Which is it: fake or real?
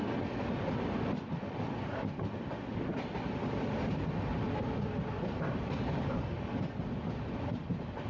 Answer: real